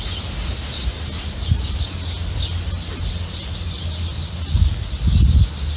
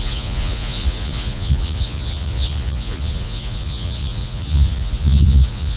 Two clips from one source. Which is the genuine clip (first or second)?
first